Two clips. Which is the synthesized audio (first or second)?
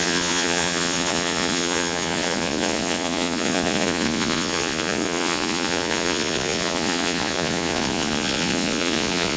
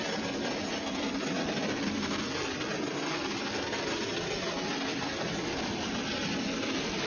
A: first